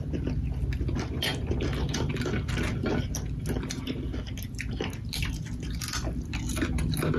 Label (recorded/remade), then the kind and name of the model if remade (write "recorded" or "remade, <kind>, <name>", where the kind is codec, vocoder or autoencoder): recorded